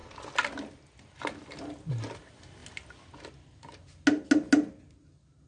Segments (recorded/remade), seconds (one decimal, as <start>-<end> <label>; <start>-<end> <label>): 0.0-5.5 recorded